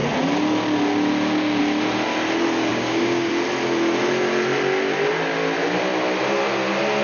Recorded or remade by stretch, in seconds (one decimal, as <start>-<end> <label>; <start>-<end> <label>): 0.0-2.7 recorded; 2.7-3.3 remade; 3.3-7.0 recorded